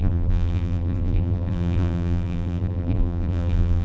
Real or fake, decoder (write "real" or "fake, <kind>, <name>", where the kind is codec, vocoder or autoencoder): fake, vocoder, BigVGAN v2